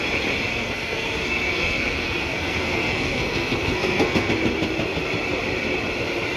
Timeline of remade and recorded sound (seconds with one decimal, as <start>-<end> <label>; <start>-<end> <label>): 0.0-0.5 recorded; 0.5-4.3 remade; 4.3-6.4 recorded